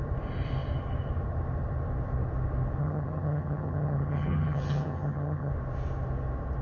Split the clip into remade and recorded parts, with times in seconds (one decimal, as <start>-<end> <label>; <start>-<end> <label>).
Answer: 0.0-2.8 recorded; 2.8-5.5 remade; 5.5-6.6 recorded